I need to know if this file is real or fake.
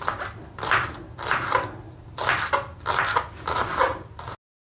real